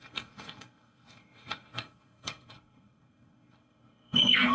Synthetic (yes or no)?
yes